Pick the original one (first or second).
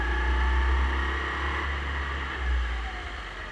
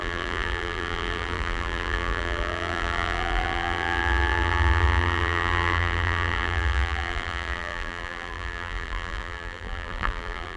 first